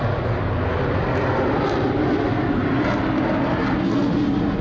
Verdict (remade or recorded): recorded